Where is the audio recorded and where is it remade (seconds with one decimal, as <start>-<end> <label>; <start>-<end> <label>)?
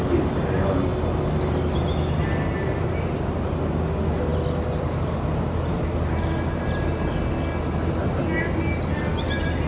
0.0-9.7 recorded